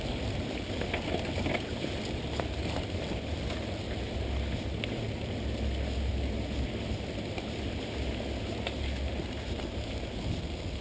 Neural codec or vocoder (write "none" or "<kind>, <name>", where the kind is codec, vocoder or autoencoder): none